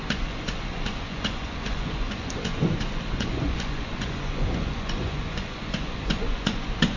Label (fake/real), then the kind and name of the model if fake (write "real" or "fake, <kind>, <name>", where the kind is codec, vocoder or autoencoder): fake, vocoder, Vocos